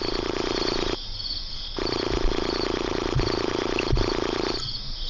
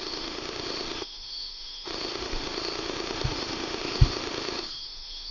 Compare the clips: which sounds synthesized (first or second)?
second